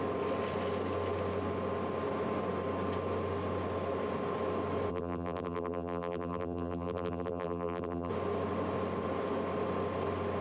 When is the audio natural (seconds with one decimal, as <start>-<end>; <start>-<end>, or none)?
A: 0.0-4.9; 8.1-10.4